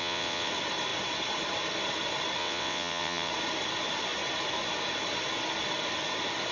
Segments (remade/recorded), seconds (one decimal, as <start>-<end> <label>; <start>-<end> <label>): 0.0-0.5 remade; 0.5-2.4 recorded; 2.4-3.3 remade; 3.3-6.5 recorded